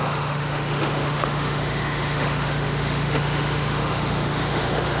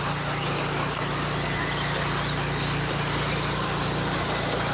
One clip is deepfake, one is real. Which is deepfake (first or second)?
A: first